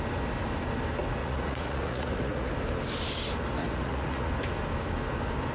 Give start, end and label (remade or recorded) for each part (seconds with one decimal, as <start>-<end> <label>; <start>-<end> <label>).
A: 0.0-1.2 recorded; 1.2-2.5 remade; 2.5-3.6 recorded; 3.6-4.3 remade; 4.3-5.5 recorded